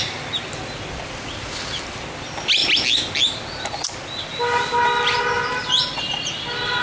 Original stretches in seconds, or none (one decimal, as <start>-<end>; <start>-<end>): 0.0-6.8